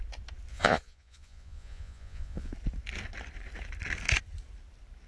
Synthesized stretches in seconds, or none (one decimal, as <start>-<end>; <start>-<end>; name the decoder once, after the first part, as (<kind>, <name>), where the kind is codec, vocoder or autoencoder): 0.5-2.5 (vocoder, Vocos)